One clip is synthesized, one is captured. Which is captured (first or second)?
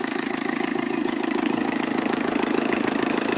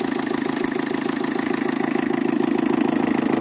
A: second